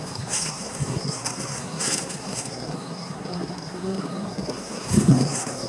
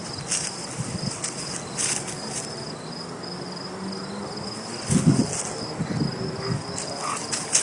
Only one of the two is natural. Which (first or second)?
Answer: second